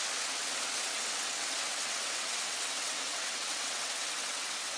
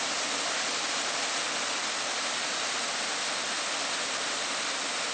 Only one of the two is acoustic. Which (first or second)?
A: second